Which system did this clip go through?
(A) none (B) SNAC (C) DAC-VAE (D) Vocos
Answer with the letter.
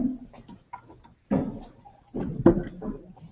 A